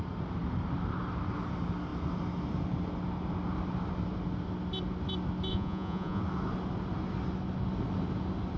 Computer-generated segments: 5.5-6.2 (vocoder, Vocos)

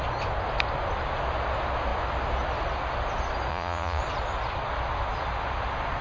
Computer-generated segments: 3.5-4.0 (vocoder, Vocos)

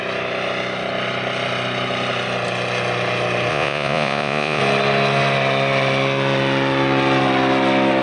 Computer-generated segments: 3.5-4.6 (vocoder, Vocos)